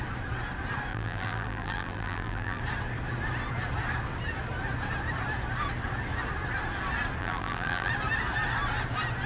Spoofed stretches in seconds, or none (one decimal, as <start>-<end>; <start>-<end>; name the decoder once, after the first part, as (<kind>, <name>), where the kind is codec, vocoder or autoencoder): 0.9-2.6 (vocoder, BigVGAN v2); 7.2-7.9